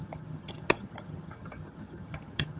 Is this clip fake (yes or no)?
yes